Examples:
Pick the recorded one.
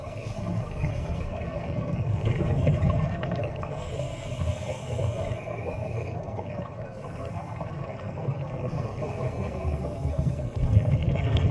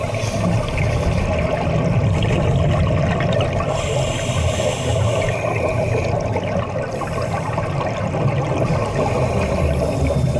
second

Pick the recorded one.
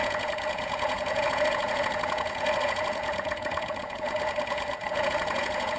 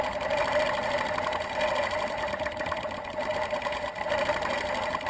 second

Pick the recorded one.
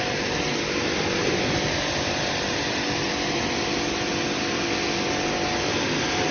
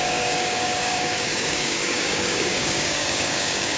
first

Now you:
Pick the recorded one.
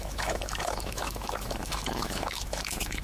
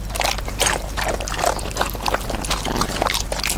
second